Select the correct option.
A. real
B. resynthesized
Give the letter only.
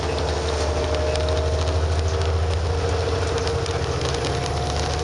A